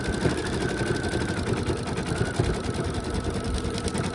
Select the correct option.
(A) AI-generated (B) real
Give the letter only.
B